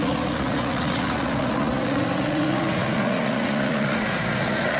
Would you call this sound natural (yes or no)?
no